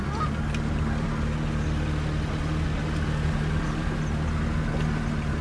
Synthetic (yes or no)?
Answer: no